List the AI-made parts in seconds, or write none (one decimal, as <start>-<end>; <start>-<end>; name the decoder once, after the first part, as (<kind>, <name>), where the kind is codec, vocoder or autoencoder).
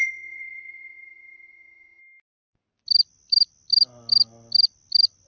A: 0.0-2.0 (vocoder, HiFi-GAN)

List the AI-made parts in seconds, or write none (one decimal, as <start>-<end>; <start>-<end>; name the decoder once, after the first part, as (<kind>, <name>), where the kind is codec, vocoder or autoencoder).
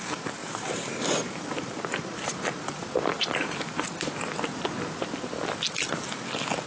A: 0.4-1.4 (vocoder, BigVGAN v2)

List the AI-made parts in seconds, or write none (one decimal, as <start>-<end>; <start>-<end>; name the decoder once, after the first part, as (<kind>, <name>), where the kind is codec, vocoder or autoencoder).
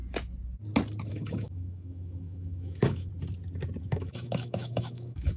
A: 1.1-3.1 (autoencoder, DAC-VAE); 3.8-5.4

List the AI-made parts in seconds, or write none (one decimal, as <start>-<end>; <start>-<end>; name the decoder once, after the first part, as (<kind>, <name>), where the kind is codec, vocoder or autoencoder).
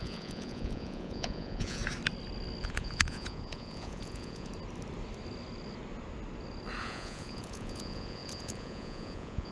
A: 0.0-1.8 (vocoder, Vocos); 2.6-4.5; 6.8-9.5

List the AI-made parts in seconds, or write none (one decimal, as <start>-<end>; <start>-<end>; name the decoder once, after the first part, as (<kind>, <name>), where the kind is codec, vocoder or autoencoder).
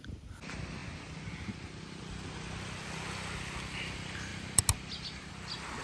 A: none